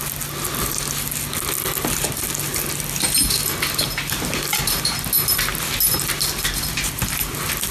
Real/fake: real